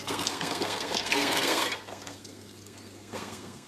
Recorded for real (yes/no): no